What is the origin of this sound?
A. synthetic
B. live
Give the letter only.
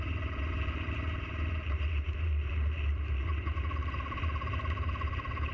A